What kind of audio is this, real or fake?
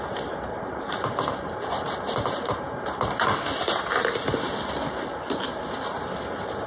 fake